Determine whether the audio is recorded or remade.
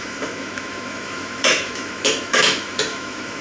remade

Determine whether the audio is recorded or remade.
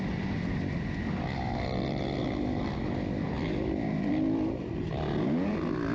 recorded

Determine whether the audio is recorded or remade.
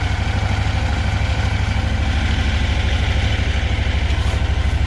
recorded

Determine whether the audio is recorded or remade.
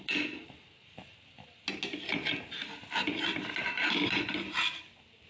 recorded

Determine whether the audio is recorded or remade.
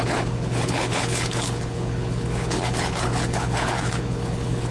remade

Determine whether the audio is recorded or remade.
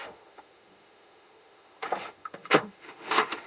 remade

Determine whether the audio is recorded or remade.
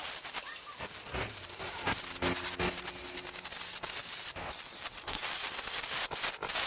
recorded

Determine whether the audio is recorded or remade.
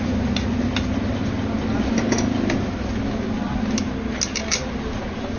recorded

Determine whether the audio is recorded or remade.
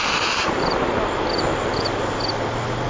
recorded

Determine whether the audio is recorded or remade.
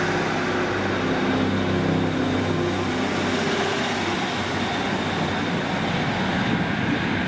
recorded